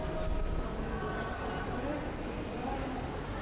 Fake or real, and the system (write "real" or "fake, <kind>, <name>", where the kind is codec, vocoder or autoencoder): real